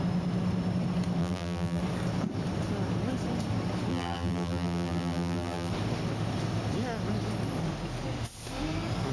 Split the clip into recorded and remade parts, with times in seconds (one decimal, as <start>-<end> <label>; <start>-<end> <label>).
0.0-1.2 recorded; 1.2-1.8 remade; 1.8-3.9 recorded; 3.9-5.7 remade; 5.7-9.1 recorded